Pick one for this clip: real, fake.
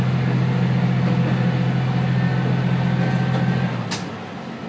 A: real